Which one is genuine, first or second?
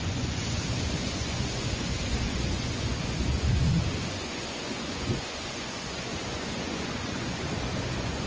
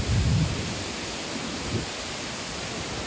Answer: second